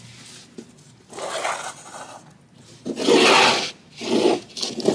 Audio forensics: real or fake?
real